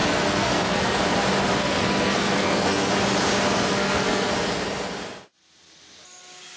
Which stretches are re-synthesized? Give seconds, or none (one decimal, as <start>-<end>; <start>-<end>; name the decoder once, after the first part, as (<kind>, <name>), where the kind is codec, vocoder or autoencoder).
0.0-1.0 (codec, SNAC); 1.6-2.9; 3.7-4.3